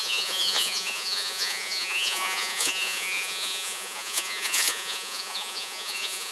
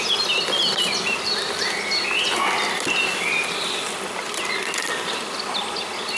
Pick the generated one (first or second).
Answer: first